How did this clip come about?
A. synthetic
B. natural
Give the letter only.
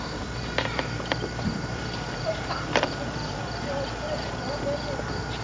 A